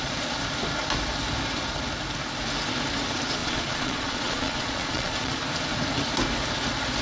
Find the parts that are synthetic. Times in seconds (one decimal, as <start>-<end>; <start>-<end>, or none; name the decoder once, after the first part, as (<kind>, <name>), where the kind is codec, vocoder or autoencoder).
3.4-5.4 (vocoder, Vocos)

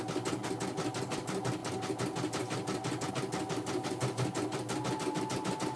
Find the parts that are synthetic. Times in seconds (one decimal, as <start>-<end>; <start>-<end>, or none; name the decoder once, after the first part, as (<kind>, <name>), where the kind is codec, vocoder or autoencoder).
none

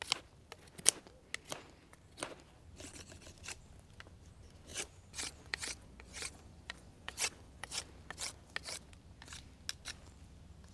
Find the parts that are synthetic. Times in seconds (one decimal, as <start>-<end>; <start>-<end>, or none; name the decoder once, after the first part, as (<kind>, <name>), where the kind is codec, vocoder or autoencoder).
4.7-7.8 (vocoder, Vocos)

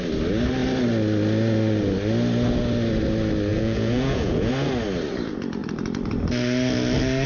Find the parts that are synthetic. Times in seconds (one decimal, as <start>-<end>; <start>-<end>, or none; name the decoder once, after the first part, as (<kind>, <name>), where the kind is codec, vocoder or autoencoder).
3.5-4.5 (vocoder, Vocos)

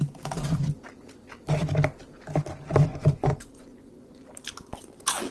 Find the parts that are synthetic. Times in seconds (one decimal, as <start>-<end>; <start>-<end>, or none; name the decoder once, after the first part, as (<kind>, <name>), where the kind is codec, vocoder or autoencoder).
2.9-4.3 (vocoder, Vocos)

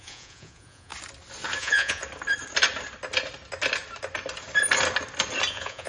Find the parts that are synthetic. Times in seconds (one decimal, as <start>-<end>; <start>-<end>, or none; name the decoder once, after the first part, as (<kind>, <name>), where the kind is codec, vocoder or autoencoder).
0.0-0.9 (vocoder, Vocos); 1.6-2.0; 5.5-5.9